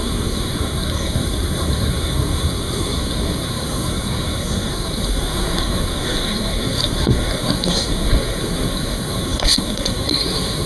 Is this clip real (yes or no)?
no